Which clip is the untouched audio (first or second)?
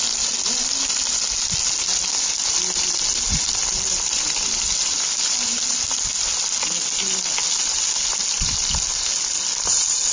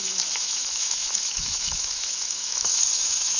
first